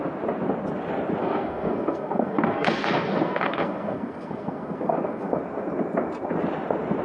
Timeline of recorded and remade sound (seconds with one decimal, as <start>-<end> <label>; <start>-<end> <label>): 0.0-1.2 recorded; 1.2-5.4 remade; 5.4-7.0 recorded